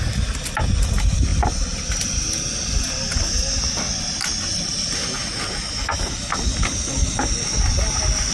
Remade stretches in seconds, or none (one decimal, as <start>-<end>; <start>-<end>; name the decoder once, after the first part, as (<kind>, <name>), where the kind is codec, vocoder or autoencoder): none